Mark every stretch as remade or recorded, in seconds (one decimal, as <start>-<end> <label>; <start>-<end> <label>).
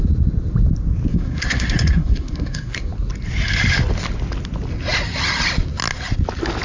0.0-1.1 recorded; 1.1-2.9 remade; 2.9-6.6 recorded